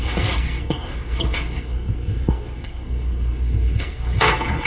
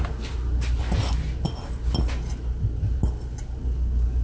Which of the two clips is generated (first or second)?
first